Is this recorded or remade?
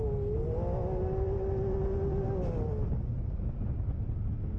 recorded